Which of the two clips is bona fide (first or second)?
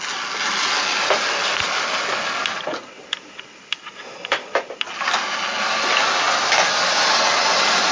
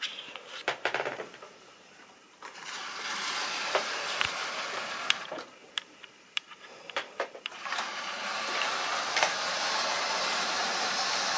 first